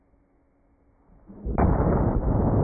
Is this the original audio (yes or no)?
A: yes